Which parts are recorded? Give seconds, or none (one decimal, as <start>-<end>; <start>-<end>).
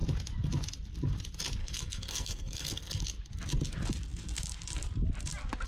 0.0-1.6; 3.0-5.7